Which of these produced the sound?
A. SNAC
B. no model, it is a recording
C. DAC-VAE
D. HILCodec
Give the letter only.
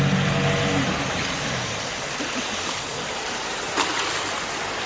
B